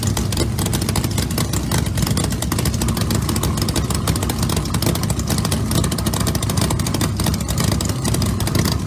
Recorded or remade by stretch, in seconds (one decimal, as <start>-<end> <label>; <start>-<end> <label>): 0.0-8.9 recorded